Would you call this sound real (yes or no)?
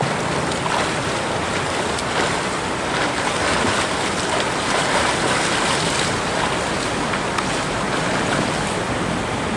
no